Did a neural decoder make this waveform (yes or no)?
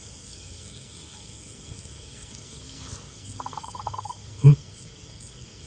yes